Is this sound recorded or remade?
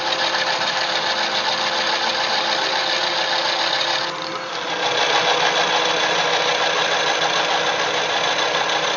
recorded